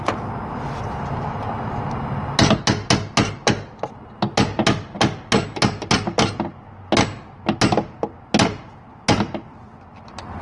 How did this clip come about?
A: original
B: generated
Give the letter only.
A